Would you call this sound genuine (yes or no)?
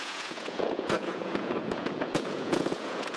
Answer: no